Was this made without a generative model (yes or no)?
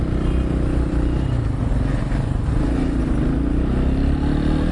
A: yes